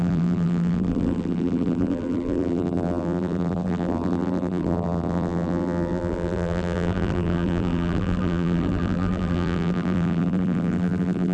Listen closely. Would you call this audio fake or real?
fake